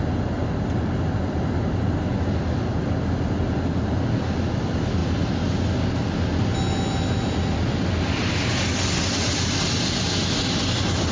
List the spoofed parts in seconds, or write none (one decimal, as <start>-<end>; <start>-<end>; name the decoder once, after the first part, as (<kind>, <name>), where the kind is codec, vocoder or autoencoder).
none

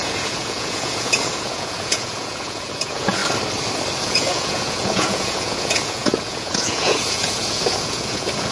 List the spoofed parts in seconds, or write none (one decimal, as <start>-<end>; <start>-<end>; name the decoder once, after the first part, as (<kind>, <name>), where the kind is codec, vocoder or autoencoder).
0.0-3.2 (vocoder, Vocos); 4.0-8.5

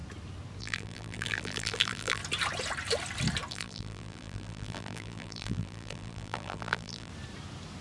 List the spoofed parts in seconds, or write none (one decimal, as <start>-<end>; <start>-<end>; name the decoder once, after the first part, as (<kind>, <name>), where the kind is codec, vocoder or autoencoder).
0.6-2.2 (vocoder, BigVGAN v2); 3.5-7.1

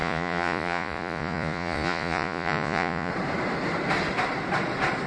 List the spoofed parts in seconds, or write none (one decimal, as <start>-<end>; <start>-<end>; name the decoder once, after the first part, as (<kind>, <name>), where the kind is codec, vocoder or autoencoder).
0.0-3.1 (vocoder, Vocos)

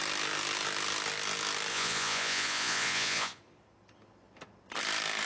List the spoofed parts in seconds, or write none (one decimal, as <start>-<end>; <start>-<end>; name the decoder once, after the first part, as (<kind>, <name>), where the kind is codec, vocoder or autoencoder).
1.7-3.4 (vocoder, Vocos)